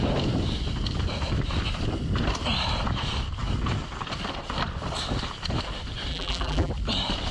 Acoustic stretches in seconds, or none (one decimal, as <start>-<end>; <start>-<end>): 0.0-6.1; 6.7-7.3